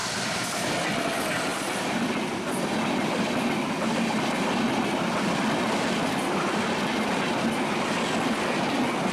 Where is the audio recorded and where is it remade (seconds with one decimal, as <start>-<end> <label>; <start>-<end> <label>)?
0.0-9.1 recorded